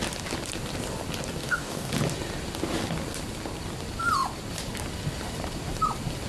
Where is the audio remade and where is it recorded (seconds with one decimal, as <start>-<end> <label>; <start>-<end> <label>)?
0.0-1.4 recorded; 1.4-1.9 remade; 1.9-6.3 recorded